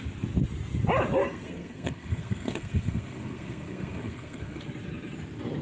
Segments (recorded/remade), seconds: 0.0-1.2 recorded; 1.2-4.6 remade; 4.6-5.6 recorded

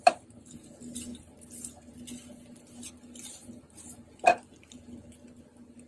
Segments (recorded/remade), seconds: 0.0-5.9 recorded

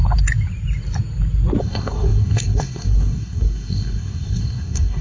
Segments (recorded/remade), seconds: 0.0-1.6 recorded; 1.6-5.0 remade